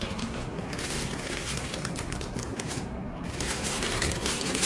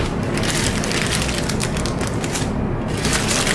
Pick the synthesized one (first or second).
first